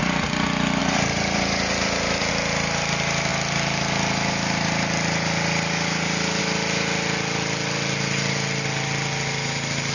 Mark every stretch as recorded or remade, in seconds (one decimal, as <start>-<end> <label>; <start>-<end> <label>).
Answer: 0.0-0.8 recorded; 0.8-2.3 remade; 2.3-9.9 recorded

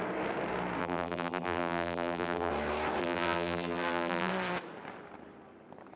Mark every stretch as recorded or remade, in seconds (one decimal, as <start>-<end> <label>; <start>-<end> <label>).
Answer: 0.0-0.8 recorded; 0.8-2.5 remade; 2.5-3.0 recorded; 3.0-4.3 remade; 4.3-6.0 recorded

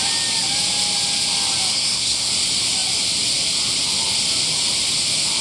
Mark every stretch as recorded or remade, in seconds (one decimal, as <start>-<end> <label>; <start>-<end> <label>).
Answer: 0.0-1.7 recorded; 1.7-2.3 remade; 2.3-5.4 recorded

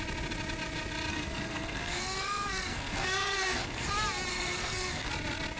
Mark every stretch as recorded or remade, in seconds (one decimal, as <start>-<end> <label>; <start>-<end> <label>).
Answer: 0.0-1.1 recorded; 1.1-3.9 remade; 3.9-4.3 recorded; 4.3-5.1 remade; 5.1-5.6 recorded

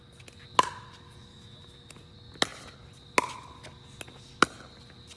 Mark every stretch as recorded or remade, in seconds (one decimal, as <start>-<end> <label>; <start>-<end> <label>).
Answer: 0.0-1.3 recorded; 1.3-1.9 remade; 1.9-5.2 recorded